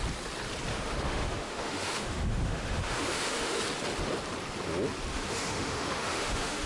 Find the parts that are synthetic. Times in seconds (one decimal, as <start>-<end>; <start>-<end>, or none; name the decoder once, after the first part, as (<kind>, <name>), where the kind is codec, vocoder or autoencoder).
0.7-3.6 (autoencoder, DAC-VAE); 5.1-6.7